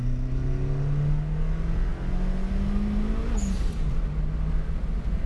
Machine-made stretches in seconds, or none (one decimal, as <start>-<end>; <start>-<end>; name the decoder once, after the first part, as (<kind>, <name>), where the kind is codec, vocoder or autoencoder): none